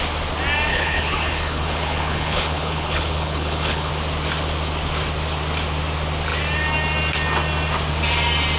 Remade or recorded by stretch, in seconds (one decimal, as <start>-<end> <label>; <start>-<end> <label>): 0.0-0.7 recorded; 0.7-3.9 remade; 3.9-8.6 recorded